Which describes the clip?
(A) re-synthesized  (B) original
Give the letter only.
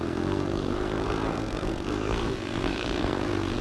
A